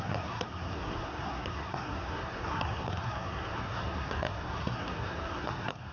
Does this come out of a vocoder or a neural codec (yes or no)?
yes